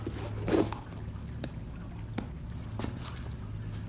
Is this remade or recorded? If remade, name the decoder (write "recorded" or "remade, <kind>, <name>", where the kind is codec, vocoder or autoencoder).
recorded